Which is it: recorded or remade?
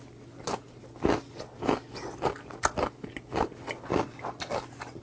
recorded